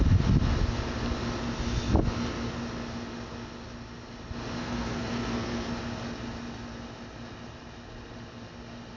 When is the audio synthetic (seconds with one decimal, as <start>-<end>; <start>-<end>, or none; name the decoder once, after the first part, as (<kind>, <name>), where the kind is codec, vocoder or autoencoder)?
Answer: 4.6-5.7 (codec, SNAC)